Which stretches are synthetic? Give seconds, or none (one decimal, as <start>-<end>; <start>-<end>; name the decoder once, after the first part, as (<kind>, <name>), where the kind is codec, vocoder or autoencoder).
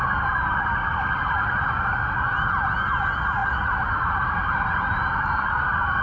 3.4-6.0 (vocoder, BigVGAN v2)